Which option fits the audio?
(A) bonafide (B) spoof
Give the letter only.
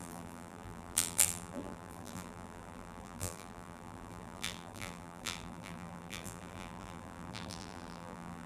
B